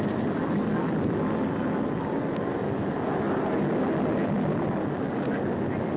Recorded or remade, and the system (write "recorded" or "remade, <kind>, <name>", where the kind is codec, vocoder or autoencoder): recorded